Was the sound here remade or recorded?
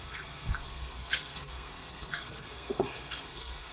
remade